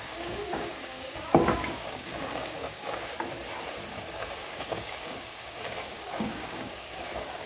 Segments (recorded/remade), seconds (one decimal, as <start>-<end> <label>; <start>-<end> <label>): 0.0-3.1 remade; 3.1-4.0 recorded; 4.0-7.5 remade